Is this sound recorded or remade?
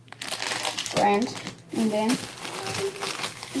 recorded